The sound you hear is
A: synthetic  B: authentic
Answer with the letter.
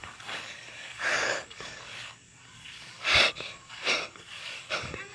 A